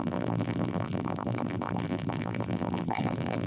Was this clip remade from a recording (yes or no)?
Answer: yes